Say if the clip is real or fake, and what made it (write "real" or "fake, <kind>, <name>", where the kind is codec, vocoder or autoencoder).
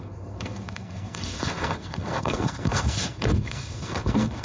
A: fake, codec, SNAC